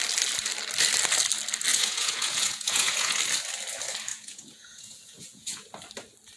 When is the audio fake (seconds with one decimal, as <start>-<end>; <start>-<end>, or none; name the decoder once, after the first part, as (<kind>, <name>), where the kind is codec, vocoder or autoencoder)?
1.7-3.2 (vocoder, Vocos); 4.1-5.7